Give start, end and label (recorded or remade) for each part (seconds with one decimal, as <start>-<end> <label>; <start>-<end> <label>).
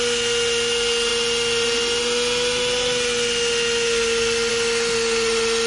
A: 0.0-5.7 recorded